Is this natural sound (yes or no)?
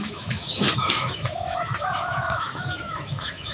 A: no